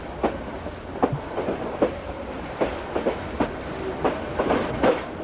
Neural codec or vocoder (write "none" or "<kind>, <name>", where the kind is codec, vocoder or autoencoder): none